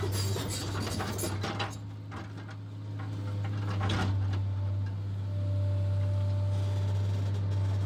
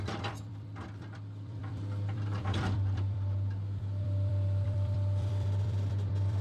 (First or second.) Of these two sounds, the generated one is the second